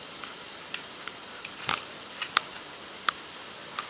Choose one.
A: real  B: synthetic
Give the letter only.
B